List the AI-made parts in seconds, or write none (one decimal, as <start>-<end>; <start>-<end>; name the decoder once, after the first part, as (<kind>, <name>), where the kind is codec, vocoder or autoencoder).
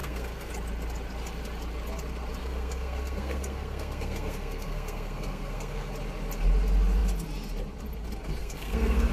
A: 0.0-0.5 (codec, SNAC); 2.4-5.9; 8.4-9.1